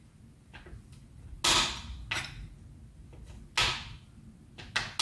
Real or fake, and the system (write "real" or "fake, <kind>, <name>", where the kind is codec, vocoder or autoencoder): real